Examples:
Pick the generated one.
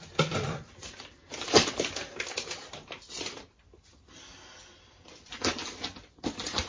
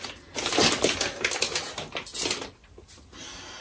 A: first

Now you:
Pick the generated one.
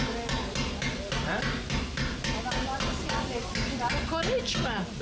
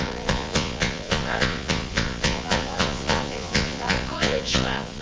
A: second